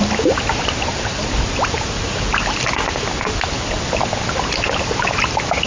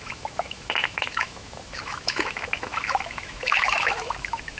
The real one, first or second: first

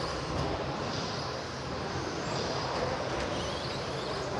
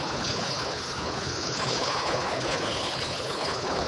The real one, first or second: first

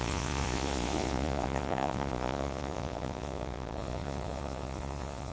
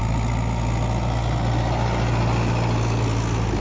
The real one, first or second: second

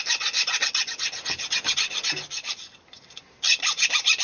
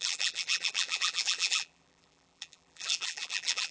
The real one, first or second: first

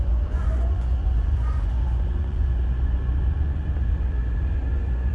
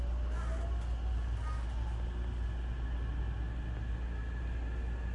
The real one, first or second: second